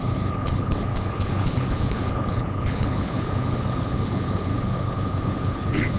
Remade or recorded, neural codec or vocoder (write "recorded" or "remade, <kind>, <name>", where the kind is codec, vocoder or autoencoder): remade, codec, HILCodec